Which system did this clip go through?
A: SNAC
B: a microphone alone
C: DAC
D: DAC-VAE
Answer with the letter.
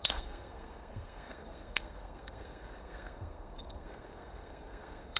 A